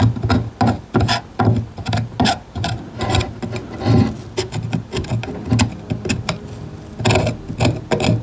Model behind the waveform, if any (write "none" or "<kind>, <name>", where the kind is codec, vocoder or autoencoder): none